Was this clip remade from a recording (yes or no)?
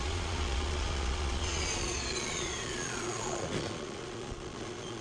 yes